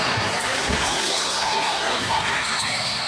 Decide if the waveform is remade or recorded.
remade